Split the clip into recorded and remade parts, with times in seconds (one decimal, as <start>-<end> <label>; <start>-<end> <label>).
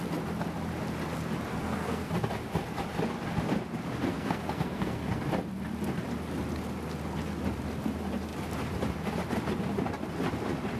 0.0-1.5 recorded; 1.5-2.1 remade; 2.1-4.1 recorded; 4.1-5.2 remade; 5.2-10.8 recorded